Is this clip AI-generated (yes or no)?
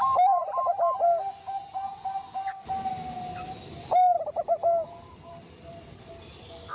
no